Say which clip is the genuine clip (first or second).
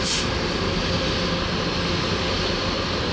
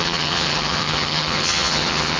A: first